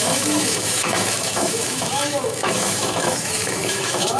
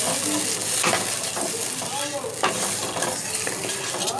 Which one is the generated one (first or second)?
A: first